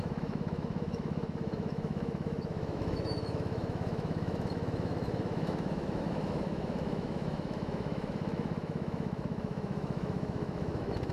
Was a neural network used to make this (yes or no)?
yes